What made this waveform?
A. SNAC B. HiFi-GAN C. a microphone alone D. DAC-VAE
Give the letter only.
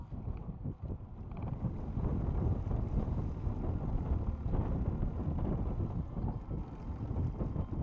C